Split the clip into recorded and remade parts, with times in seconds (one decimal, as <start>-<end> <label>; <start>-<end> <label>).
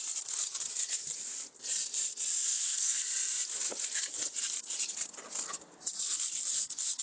0.0-2.5 recorded; 2.5-3.0 remade; 3.0-7.0 recorded